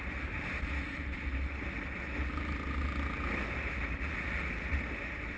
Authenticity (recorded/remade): recorded